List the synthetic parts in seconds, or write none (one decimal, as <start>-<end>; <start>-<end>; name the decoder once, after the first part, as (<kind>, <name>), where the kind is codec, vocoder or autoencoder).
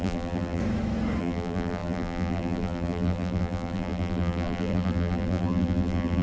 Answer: 0.0-0.6 (vocoder, BigVGAN v2); 1.2-6.2